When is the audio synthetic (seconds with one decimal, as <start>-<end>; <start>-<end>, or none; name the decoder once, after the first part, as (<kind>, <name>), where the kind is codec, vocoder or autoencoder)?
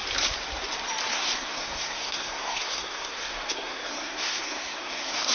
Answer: 1.1-5.3 (codec, SNAC)